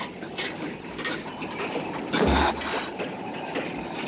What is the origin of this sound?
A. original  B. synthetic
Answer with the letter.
A